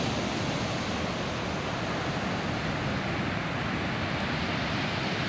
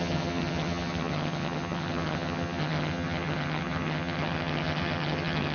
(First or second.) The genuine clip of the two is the first